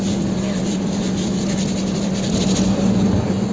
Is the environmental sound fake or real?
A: real